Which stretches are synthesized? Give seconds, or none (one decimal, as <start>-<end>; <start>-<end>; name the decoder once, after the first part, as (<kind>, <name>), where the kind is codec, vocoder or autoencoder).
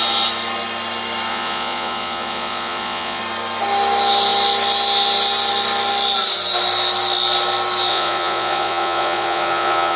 1.3-3.2 (vocoder, Vocos); 7.9-10.0